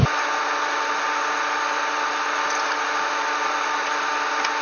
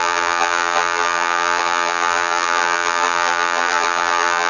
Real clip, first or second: first